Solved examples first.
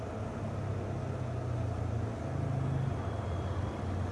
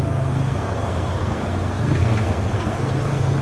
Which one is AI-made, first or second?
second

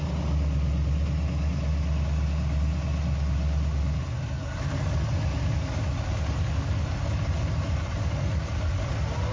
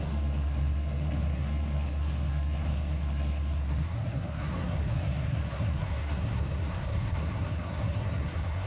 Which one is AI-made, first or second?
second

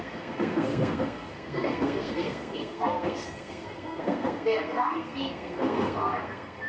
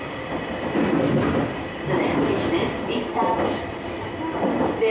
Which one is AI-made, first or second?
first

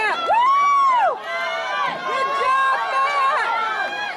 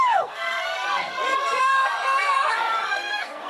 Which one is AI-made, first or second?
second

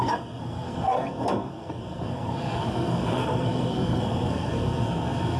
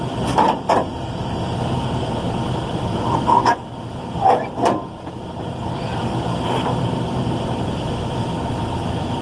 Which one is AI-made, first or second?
first